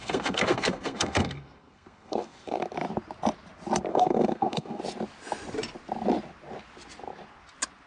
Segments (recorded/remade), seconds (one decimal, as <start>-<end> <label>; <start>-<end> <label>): 0.0-2.6 remade; 2.6-3.9 recorded; 3.9-4.8 remade; 4.8-7.9 recorded